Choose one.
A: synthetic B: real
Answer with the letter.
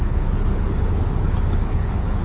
A